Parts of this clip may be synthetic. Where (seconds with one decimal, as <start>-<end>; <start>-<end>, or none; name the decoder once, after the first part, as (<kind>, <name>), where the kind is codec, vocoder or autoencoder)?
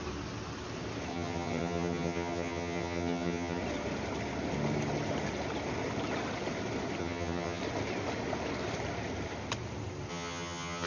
1.1-3.6 (vocoder, HiFi-GAN); 7.0-7.6; 10.1-10.9